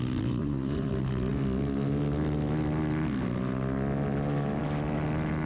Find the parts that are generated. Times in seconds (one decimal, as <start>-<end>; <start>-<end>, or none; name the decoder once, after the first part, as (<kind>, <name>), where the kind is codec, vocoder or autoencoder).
0.4-0.9 (vocoder, Vocos)